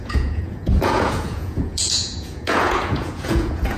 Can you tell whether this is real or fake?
fake